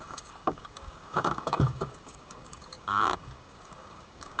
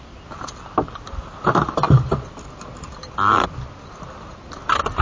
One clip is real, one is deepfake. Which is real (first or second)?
second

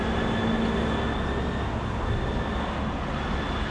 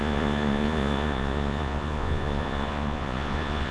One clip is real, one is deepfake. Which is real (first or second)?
first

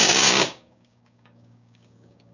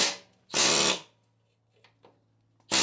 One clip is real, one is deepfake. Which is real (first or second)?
second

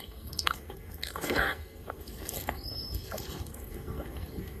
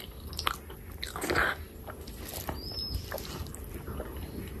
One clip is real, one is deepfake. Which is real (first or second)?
second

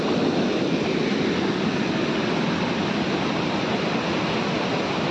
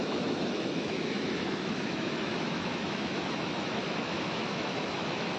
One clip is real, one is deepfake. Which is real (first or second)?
first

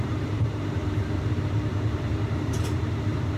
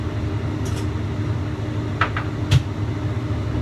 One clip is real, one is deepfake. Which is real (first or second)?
second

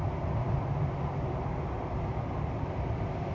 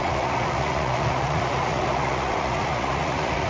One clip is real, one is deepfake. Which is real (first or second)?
first